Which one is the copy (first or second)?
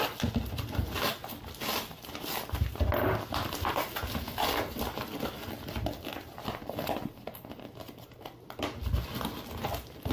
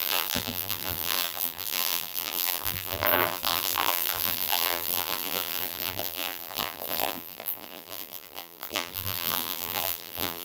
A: second